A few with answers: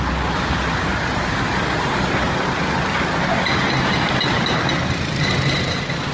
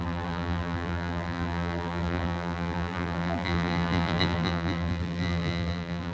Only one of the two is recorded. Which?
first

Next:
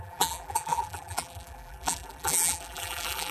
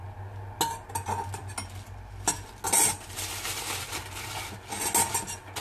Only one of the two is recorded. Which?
second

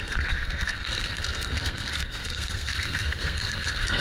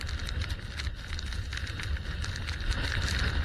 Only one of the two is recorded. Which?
second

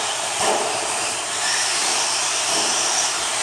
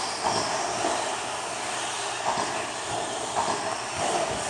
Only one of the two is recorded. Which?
second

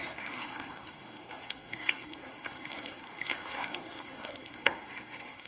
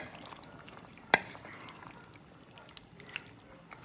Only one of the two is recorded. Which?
second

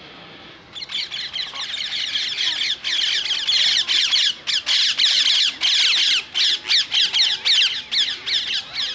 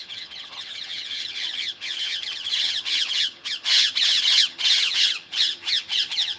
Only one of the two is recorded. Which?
first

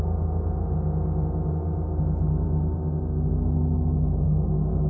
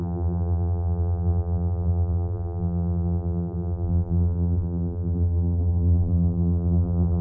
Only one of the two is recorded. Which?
first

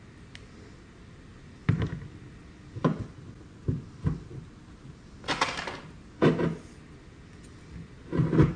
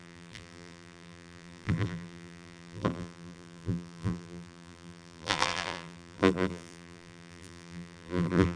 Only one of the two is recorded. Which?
first